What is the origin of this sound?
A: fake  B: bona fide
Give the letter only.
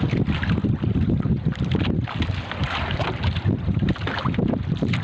B